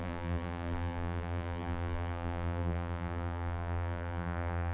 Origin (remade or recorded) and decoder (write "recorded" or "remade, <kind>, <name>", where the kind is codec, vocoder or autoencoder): remade, vocoder, BigVGAN v2